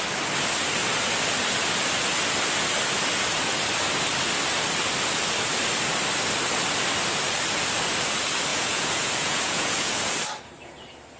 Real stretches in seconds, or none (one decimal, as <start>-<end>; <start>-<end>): 0.0-8.5; 10.1-11.2